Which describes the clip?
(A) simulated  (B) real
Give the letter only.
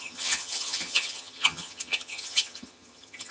A